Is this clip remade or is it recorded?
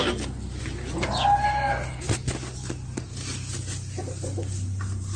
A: recorded